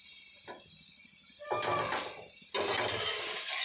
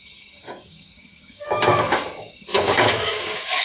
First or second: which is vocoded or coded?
second